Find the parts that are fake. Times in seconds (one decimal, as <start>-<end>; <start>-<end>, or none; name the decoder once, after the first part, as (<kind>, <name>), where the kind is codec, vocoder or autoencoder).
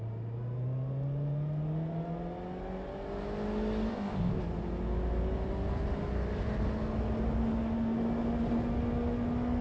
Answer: 3.9-4.4 (codec, ZipCodec)